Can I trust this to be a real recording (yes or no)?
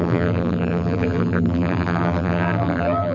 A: no